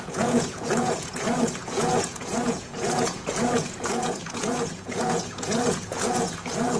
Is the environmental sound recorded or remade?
remade